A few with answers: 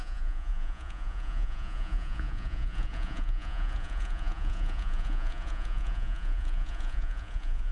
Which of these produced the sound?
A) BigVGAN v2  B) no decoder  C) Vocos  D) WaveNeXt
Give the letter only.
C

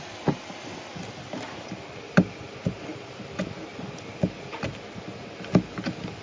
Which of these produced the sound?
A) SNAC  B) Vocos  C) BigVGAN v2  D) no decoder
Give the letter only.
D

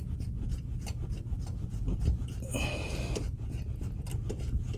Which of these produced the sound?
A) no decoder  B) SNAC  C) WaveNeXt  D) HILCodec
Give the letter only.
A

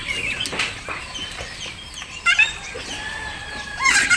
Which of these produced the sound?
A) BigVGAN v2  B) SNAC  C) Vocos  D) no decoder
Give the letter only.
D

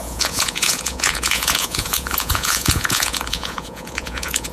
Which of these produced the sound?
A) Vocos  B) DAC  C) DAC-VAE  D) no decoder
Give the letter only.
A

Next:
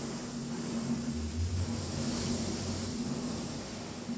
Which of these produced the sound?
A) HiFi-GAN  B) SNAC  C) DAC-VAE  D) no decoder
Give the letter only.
D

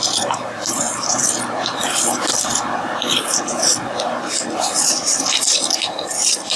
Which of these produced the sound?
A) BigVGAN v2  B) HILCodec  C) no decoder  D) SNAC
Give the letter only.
A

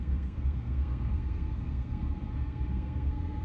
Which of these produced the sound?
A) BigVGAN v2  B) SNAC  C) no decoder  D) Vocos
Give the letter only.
B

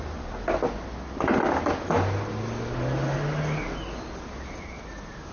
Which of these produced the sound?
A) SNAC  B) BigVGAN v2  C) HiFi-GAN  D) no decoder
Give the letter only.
D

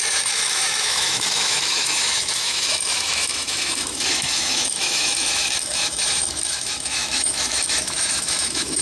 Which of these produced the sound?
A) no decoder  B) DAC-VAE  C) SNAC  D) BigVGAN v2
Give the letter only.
B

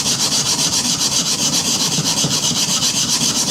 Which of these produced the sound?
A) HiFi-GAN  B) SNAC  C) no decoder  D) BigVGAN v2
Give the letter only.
D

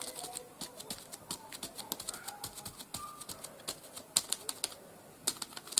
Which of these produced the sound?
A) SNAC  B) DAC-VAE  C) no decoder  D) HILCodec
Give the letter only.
C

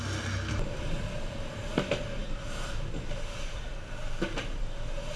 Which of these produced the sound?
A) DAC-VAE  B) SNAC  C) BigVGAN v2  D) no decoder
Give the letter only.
D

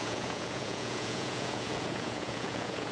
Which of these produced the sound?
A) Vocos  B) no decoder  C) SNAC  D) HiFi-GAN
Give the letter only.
A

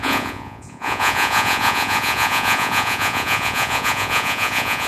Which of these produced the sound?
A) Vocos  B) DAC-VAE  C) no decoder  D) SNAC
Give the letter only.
A